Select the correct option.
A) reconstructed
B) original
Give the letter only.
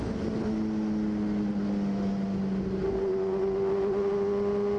B